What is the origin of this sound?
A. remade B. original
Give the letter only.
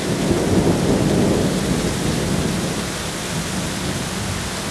B